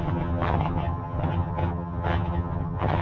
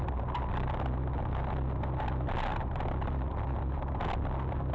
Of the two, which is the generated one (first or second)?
first